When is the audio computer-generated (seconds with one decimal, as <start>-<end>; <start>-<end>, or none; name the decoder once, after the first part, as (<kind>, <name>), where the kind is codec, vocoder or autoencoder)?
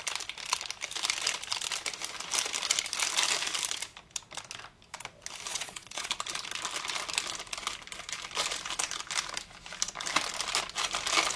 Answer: 5.5-6.1 (vocoder, Vocos)